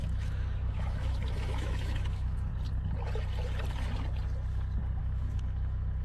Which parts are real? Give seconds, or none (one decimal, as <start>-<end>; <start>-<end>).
2.5-5.0